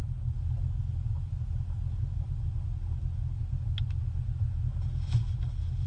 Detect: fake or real real